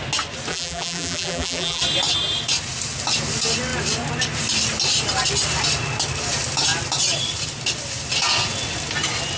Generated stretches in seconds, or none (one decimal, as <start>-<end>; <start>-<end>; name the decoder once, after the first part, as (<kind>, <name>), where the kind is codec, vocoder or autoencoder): 0.5-1.8 (vocoder, BigVGAN v2)